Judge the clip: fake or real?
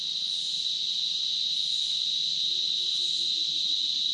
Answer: real